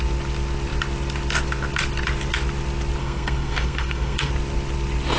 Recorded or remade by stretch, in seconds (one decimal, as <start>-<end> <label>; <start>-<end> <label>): 0.0-3.0 recorded; 3.0-4.3 remade; 4.3-5.2 recorded